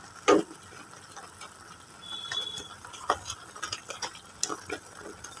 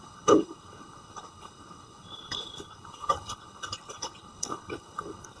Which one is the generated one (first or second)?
second